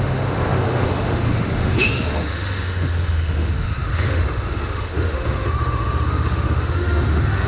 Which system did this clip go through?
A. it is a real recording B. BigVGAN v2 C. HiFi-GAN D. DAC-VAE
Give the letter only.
D